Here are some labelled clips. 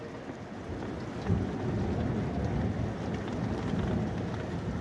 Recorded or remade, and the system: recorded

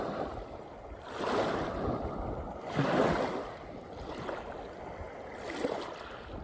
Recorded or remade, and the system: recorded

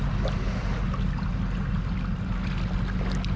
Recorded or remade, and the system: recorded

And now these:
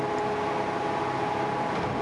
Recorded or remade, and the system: recorded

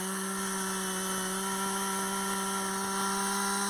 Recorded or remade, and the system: recorded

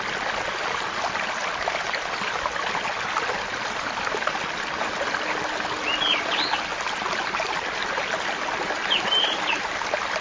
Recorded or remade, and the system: recorded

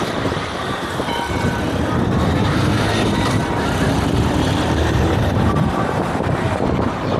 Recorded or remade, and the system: remade, vocoder, BigVGAN v2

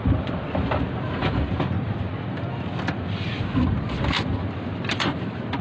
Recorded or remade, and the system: recorded